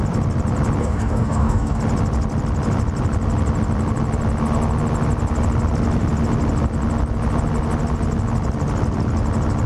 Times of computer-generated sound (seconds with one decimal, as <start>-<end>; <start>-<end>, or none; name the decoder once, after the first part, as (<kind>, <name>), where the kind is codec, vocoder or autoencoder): 0.8-1.8 (codec, DAC)